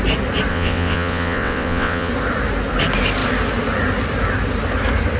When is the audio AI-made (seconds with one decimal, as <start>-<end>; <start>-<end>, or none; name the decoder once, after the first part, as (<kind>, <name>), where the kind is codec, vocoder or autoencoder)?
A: 0.5-2.1 (vocoder, WaveNeXt)